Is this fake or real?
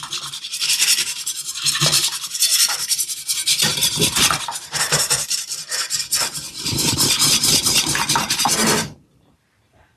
fake